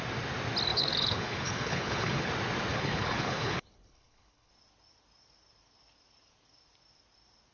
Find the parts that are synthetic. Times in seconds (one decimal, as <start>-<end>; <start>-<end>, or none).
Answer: 0.7-2.3; 2.7-4.5